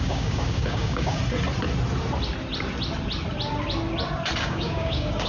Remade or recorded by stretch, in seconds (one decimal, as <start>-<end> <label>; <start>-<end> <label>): 0.0-1.2 remade; 1.2-4.4 recorded; 4.4-5.3 remade